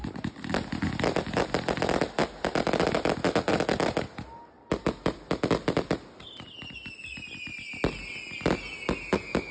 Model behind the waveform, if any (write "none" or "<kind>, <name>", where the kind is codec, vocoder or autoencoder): none